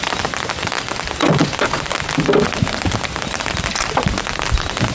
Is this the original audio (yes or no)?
yes